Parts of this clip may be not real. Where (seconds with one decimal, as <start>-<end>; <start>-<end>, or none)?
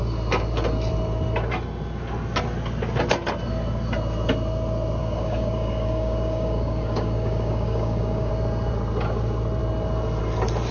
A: 5.0-8.3